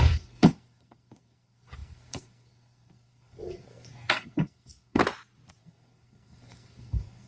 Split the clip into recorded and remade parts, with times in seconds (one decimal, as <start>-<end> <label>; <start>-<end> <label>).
0.0-5.0 remade; 5.0-5.6 recorded; 5.6-7.3 remade